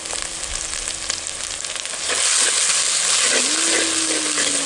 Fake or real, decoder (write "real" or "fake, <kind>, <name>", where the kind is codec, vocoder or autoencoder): real